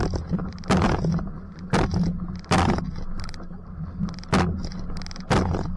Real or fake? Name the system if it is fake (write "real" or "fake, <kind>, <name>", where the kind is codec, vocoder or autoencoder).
real